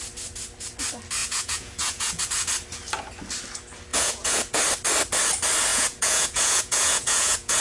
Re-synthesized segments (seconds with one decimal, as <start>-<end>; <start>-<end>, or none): 1.2-2.2; 3.9-4.6; 5.7-7.6